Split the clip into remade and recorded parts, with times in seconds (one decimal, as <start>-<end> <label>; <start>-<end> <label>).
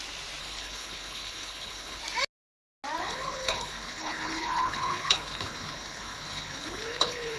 0.0-0.4 recorded; 0.4-2.0 remade; 2.0-3.0 recorded; 3.0-7.4 remade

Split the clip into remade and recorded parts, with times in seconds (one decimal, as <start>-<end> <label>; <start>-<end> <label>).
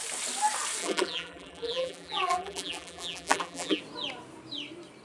0.0-0.8 recorded; 0.8-3.8 remade; 3.8-5.0 recorded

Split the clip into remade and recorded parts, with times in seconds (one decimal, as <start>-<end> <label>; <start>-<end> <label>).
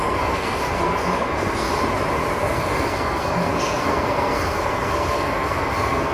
0.0-1.7 remade; 1.7-2.3 recorded; 2.3-6.1 remade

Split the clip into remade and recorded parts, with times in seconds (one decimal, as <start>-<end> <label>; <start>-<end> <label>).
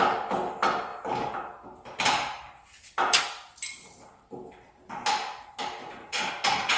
0.0-5.8 recorded; 5.8-6.3 remade; 6.3-6.8 recorded